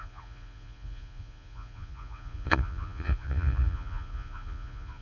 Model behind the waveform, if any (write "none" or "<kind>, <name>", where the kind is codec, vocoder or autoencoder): vocoder, Vocos